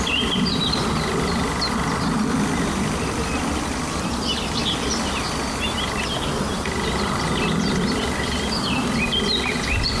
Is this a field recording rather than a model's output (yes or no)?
yes